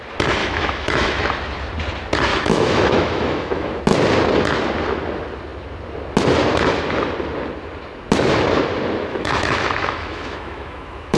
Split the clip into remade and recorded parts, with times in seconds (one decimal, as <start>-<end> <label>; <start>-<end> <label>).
0.0-0.4 recorded; 0.4-1.2 remade; 1.2-2.3 recorded; 2.3-3.8 remade; 3.8-9.1 recorded; 9.1-11.2 remade